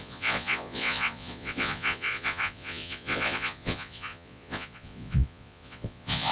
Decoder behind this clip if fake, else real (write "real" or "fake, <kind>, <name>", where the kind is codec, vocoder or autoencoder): fake, vocoder, Vocos